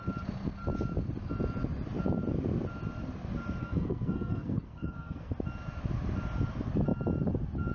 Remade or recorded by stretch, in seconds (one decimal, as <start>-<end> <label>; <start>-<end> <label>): 0.0-3.6 recorded; 3.6-5.3 remade; 5.3-7.7 recorded